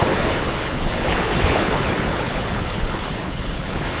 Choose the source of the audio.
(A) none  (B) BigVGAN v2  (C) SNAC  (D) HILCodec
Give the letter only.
D